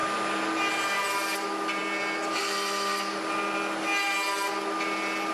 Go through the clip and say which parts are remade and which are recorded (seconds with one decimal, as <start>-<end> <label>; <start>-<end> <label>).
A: 0.0-5.3 recorded